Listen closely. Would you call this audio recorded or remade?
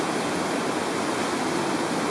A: recorded